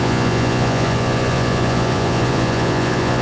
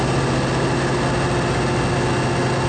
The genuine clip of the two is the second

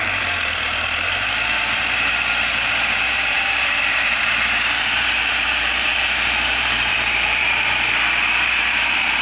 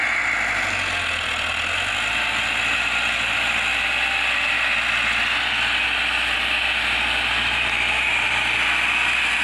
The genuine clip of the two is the second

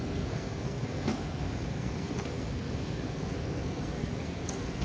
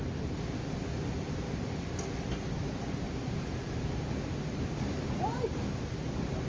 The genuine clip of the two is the second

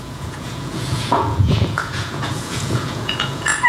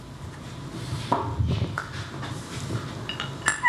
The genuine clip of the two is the second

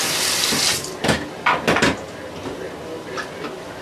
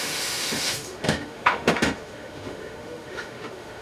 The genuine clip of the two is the first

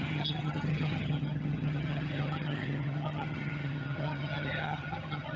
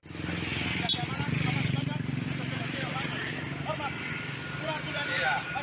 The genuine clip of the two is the second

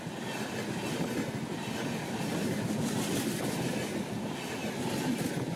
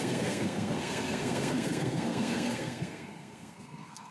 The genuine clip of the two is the first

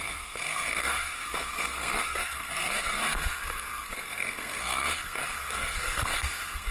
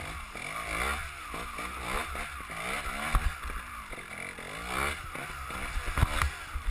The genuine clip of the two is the second